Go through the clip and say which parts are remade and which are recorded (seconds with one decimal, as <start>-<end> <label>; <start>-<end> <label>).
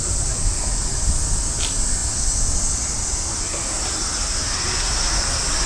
0.0-5.7 recorded